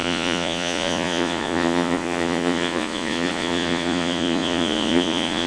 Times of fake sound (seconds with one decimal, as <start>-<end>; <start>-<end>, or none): 0.0-5.5